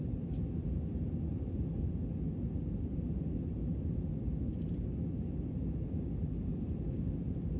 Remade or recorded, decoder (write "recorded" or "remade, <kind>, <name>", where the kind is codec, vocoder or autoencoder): recorded